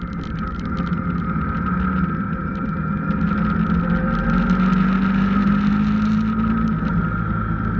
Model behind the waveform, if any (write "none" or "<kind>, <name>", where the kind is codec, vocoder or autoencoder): none